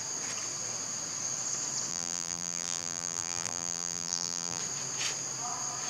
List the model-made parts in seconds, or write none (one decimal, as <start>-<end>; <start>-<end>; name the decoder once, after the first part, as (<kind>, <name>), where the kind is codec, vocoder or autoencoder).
1.9-4.6 (vocoder, BigVGAN v2)